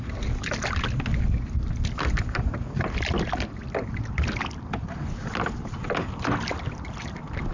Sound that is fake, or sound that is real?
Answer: real